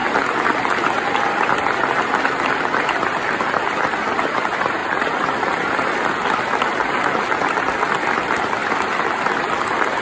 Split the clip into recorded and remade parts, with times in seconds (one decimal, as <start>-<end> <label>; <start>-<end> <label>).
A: 0.0-10.0 recorded